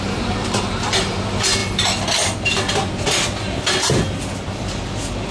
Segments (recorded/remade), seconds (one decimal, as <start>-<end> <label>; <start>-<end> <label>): 0.0-5.3 recorded